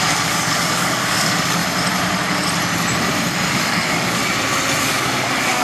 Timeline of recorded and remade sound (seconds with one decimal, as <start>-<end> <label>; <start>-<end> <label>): 0.0-1.6 remade; 1.6-3.5 recorded; 3.5-4.2 remade; 4.2-4.8 recorded; 4.8-5.6 remade